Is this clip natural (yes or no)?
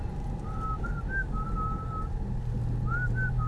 yes